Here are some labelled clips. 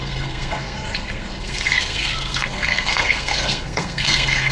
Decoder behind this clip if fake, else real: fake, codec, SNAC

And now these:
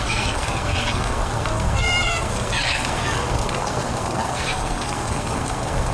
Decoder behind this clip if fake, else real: fake, codec, SNAC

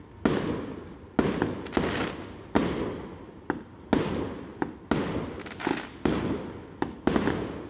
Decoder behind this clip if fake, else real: real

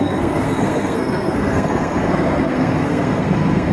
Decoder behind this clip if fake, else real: fake, codec, SNAC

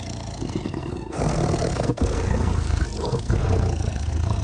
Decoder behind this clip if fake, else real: fake, codec, SNAC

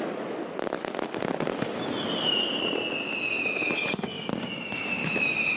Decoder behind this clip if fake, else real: real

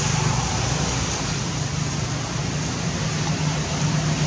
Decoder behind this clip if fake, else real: real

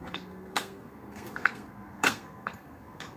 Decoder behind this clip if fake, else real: fake, codec, SNAC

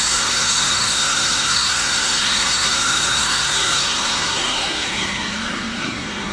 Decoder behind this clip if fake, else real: fake, codec, SNAC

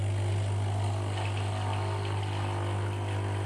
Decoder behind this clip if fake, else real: real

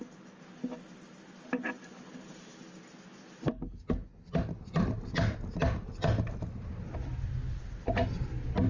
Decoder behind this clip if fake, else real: real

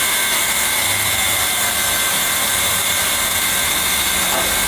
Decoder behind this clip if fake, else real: real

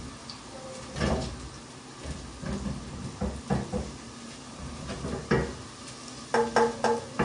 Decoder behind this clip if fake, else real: real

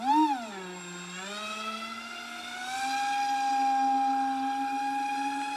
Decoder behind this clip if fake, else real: real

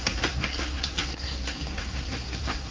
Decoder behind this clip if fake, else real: fake, codec, SNAC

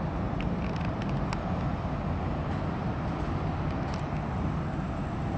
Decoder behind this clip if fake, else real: real